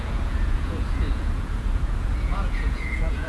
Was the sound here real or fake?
fake